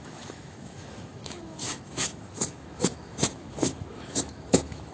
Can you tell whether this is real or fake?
fake